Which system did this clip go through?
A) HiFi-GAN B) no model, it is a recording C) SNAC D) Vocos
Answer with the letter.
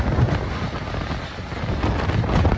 B